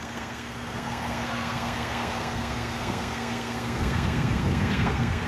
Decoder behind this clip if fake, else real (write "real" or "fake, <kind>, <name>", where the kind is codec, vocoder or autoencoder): fake, codec, SNAC